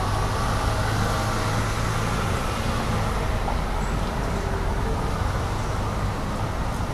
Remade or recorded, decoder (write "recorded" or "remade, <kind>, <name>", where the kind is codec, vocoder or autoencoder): recorded